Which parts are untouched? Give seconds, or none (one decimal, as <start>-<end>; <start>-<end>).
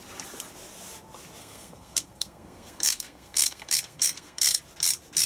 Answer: 0.0-1.4; 4.6-5.3